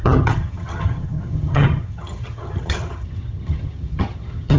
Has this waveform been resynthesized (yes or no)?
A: yes